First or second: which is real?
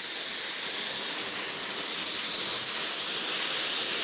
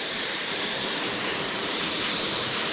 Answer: first